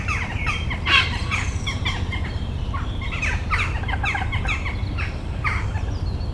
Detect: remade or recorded remade